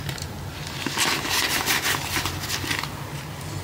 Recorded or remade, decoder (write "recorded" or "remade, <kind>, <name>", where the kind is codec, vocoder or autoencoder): recorded